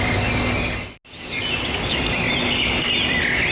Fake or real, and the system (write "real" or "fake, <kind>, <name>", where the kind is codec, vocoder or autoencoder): real